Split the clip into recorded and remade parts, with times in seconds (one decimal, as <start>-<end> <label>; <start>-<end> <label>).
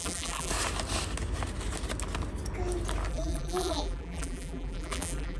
0.0-0.5 remade; 0.5-3.1 recorded; 3.1-5.4 remade